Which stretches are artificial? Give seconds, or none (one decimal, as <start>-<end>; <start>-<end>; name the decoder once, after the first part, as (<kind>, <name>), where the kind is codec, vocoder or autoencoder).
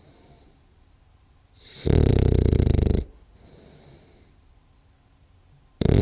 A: none